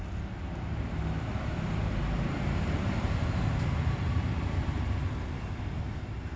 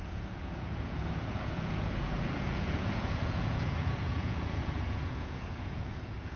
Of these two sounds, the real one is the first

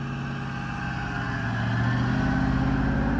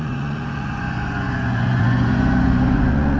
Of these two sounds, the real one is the first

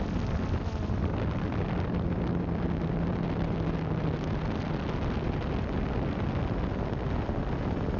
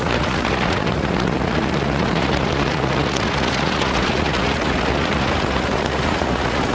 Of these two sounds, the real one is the first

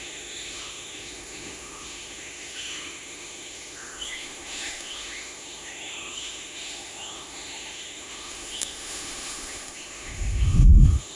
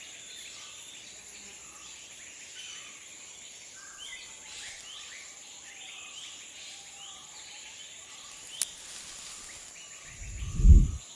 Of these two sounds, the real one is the second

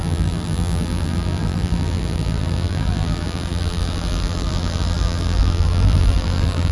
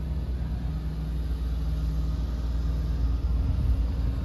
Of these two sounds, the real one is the second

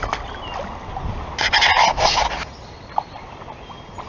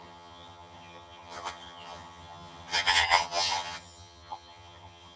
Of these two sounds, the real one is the first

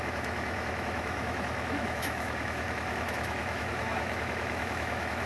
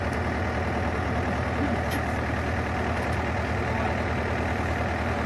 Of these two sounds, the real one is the second